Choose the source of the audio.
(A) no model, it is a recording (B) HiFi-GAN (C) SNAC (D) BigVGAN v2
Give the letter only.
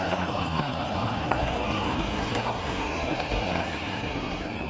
C